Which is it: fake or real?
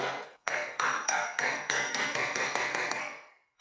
fake